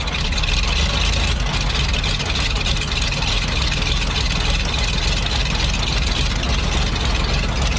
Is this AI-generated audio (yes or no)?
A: no